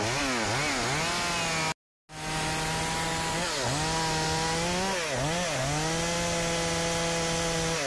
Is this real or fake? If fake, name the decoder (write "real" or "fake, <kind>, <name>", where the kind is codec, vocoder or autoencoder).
real